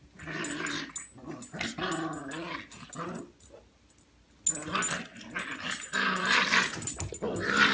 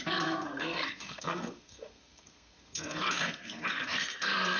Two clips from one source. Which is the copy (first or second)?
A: second